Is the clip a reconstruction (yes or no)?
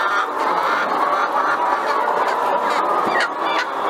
no